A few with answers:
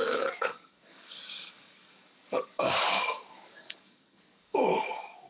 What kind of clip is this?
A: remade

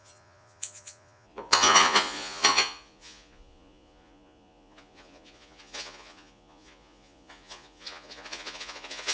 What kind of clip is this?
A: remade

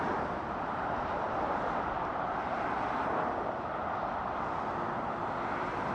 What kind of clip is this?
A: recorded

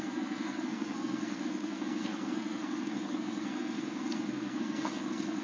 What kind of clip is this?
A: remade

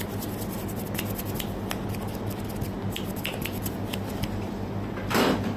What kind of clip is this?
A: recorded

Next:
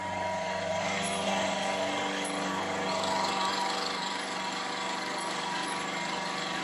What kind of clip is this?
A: remade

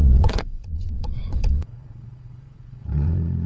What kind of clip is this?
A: remade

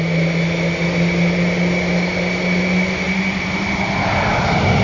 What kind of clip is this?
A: recorded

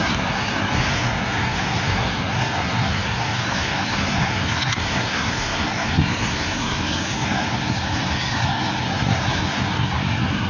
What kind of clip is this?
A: remade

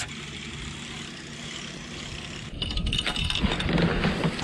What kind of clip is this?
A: recorded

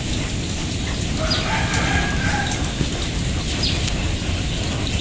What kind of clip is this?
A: recorded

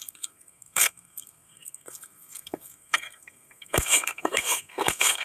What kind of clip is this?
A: remade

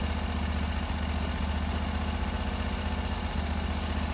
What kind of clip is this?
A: recorded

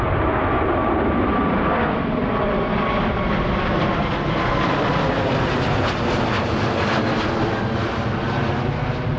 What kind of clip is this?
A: recorded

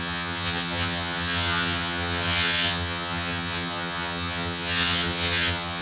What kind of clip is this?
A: remade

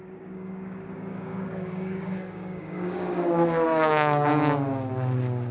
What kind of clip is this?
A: remade